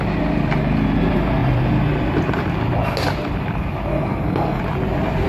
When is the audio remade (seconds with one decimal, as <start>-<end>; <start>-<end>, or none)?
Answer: 3.9-4.6